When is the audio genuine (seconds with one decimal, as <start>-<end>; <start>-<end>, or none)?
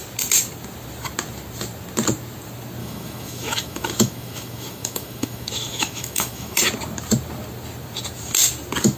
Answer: 0.0-2.8; 6.6-9.0